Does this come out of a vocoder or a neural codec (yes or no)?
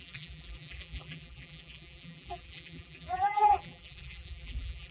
yes